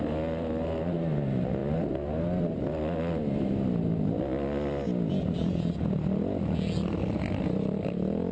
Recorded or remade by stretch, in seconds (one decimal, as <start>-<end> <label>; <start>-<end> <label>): 0.0-8.3 recorded